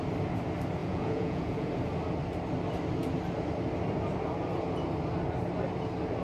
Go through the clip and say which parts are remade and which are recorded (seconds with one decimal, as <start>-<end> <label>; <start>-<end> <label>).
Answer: 0.0-0.8 recorded; 0.8-1.7 remade; 1.7-6.2 recorded